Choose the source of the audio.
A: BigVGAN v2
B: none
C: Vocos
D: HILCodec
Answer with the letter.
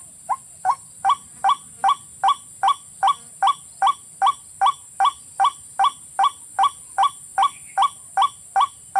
B